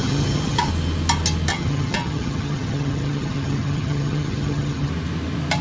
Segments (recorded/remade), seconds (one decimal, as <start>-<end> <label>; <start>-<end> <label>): 0.0-0.7 remade; 0.7-1.5 recorded; 1.5-4.9 remade; 4.9-5.6 recorded